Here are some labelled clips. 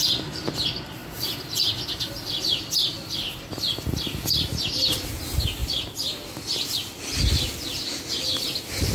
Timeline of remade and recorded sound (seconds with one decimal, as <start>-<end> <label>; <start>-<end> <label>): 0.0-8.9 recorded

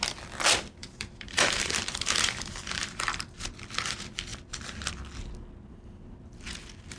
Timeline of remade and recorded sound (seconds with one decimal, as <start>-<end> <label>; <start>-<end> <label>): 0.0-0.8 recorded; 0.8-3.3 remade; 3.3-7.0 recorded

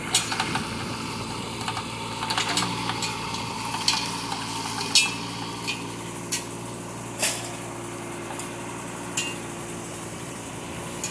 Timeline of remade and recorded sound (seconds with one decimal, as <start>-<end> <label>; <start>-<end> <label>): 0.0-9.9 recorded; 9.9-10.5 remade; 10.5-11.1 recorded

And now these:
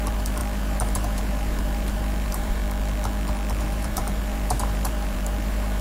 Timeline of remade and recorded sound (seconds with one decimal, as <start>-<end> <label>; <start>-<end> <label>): 0.0-2.6 remade; 2.6-3.6 recorded; 3.6-5.8 remade